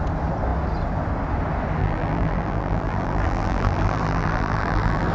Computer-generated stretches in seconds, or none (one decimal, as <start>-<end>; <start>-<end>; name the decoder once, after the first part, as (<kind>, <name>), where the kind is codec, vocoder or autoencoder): 1.8-5.1 (vocoder, BigVGAN v2)